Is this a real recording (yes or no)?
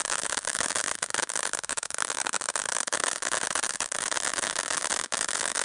no